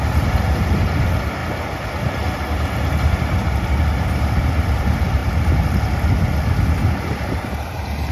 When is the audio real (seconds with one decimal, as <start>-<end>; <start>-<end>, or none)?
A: 1.4-3.1; 5.2-7.0

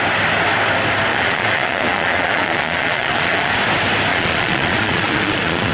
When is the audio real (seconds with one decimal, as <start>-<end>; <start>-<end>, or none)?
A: 0.0-1.1; 3.5-4.1

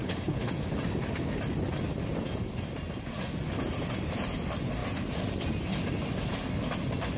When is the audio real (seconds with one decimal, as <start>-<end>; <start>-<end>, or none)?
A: 0.5-7.2

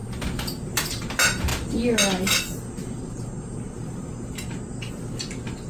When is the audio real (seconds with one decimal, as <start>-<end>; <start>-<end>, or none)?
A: 0.0-5.7

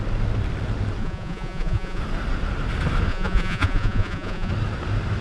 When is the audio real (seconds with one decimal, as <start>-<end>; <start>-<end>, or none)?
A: 0.0-1.0; 2.0-3.1; 4.5-5.2

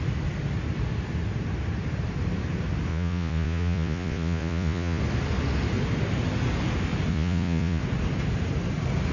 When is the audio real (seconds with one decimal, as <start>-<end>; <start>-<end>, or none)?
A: 0.0-2.9; 5.0-7.1; 7.8-9.1

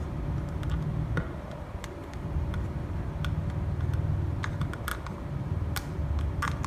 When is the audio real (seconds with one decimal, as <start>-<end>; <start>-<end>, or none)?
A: 0.0-2.0; 2.5-6.7